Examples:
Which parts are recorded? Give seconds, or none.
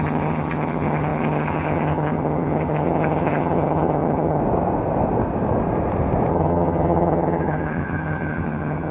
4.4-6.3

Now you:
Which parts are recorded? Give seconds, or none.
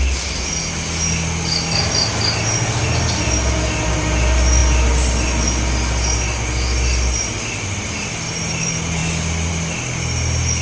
0.0-10.6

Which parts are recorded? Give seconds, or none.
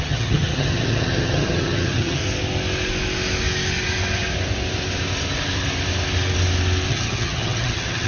2.2-6.9